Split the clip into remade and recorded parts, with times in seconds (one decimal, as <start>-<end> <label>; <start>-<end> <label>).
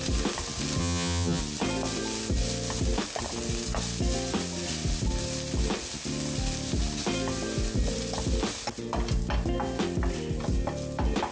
0.0-0.8 recorded; 0.8-1.4 remade; 1.4-11.3 recorded